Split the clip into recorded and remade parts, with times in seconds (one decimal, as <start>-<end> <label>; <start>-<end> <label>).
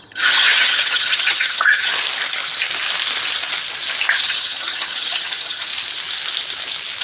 0.0-1.9 remade; 1.9-4.1 recorded; 4.1-5.7 remade; 5.7-7.0 recorded